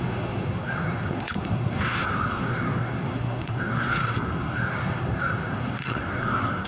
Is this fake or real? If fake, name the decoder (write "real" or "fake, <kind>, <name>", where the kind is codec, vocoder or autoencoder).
fake, codec, SNAC